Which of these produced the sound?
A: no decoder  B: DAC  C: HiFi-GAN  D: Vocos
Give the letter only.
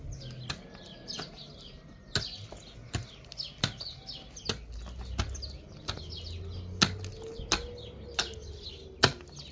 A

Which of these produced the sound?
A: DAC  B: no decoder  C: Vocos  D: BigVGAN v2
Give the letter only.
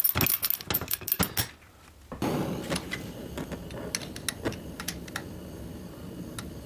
B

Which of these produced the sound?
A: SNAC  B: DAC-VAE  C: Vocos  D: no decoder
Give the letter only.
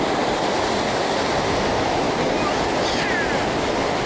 D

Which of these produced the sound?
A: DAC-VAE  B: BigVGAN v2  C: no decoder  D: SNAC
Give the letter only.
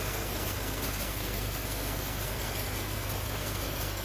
D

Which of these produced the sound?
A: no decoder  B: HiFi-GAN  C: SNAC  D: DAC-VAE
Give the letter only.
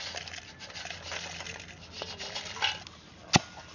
A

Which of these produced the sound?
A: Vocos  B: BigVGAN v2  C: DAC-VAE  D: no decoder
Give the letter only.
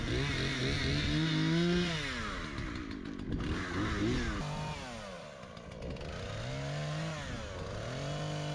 D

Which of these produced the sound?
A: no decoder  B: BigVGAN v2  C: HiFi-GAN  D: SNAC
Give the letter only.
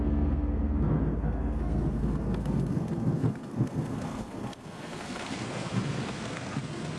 D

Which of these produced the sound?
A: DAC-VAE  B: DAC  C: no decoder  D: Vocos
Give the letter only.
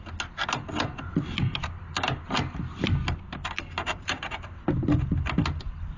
C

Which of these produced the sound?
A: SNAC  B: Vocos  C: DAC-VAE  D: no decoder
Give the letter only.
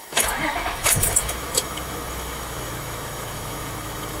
C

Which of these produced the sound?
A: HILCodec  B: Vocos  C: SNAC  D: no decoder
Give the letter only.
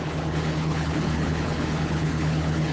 A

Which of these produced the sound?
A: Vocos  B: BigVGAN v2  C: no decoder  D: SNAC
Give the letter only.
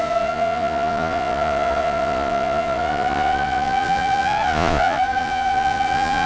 A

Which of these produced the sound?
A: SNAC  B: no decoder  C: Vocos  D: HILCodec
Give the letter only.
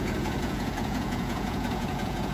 C